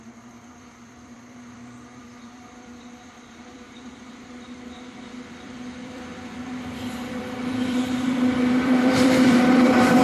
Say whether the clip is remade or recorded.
remade